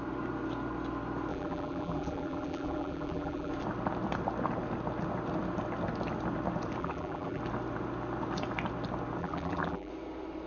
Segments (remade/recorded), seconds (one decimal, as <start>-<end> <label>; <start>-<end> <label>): 0.0-1.3 recorded; 1.3-3.5 remade; 3.5-6.8 recorded; 6.8-7.4 remade; 7.4-9.2 recorded; 9.2-9.9 remade; 9.9-10.5 recorded